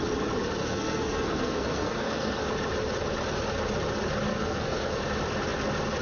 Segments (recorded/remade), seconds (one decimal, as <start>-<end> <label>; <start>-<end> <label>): 0.0-0.6 recorded; 0.6-2.4 remade; 2.4-4.3 recorded; 4.3-5.0 remade; 5.0-6.0 recorded